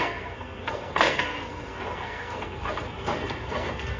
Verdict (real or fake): fake